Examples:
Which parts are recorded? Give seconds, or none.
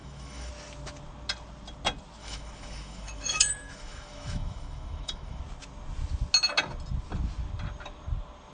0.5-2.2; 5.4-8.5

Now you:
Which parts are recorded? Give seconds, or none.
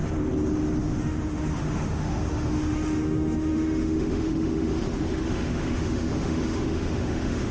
0.0-0.8